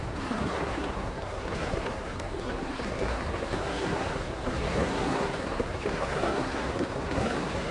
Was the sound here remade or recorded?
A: remade